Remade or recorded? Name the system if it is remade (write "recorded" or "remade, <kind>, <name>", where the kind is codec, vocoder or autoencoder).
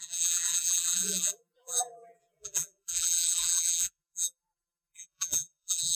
remade, vocoder, BigVGAN v2